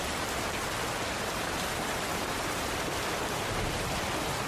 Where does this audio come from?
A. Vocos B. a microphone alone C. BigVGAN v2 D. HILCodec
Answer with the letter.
B